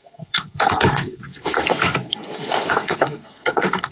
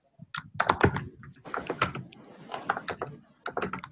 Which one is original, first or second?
second